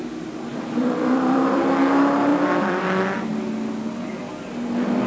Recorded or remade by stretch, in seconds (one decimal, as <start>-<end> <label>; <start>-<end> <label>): 0.0-0.5 recorded; 0.5-1.7 remade; 1.7-2.3 recorded; 2.3-2.8 remade; 2.8-5.1 recorded